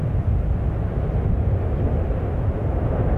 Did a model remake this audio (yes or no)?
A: no